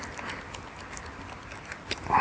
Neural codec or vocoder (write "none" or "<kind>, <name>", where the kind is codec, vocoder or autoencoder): none